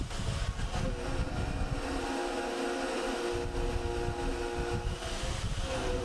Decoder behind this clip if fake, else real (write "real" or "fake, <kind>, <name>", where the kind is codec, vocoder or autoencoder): real